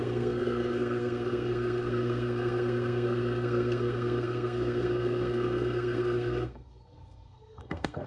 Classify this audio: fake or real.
fake